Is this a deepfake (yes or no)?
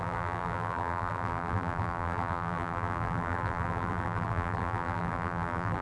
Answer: yes